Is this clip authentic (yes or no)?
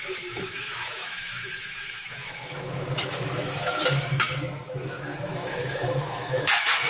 no